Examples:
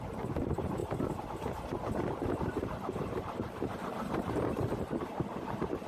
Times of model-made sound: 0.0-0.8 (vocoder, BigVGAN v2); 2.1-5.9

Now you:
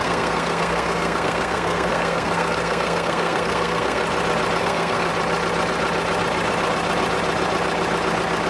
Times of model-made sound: 0.0-4.0 (codec, SNAC); 4.6-5.1

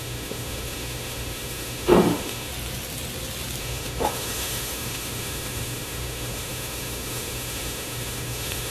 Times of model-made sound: 0.0-2.5 (autoencoder, DAC-VAE); 3.6-8.7

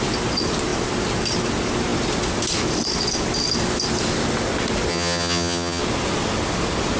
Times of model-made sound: 4.9-5.8 (vocoder, HiFi-GAN)

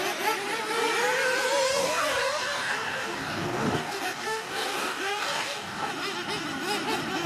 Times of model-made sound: 1.7-5.9 (codec, DAC)

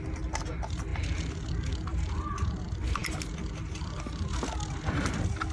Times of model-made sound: none